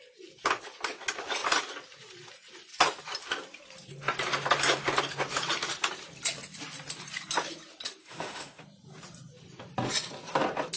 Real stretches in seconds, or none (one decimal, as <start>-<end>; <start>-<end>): 0.0-8.0; 8.6-10.8